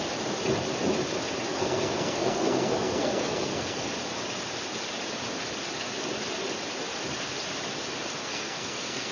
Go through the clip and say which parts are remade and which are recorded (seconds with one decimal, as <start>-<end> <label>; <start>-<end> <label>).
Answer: 0.0-1.5 recorded; 1.5-3.9 remade; 3.9-8.2 recorded; 8.2-9.1 remade